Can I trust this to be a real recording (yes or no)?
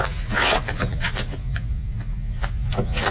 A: no